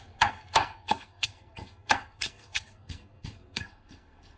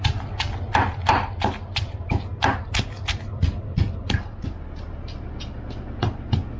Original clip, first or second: second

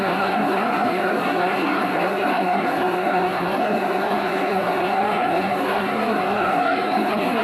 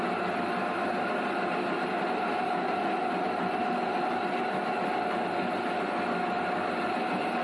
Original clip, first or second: second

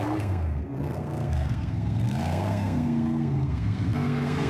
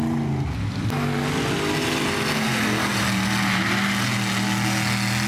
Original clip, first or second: second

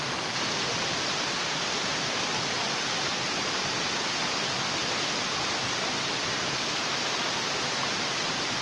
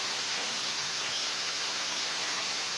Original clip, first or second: first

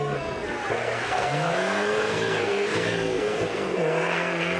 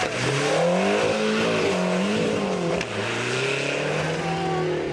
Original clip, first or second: second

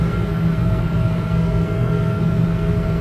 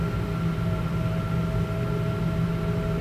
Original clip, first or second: second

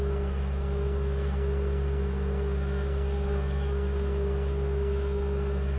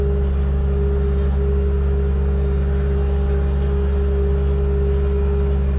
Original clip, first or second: second